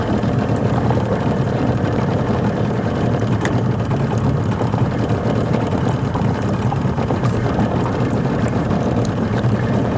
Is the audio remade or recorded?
remade